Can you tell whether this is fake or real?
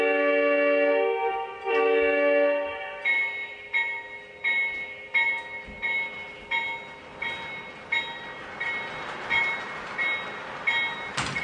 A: real